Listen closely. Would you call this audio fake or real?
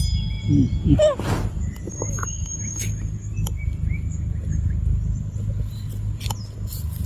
real